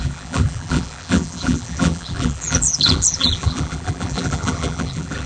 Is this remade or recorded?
remade